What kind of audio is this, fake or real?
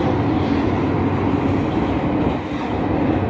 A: real